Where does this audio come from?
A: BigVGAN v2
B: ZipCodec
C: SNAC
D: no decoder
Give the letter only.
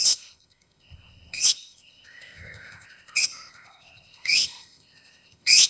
B